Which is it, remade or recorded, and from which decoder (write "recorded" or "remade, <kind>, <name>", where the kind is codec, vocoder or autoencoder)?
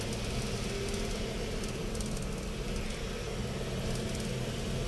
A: recorded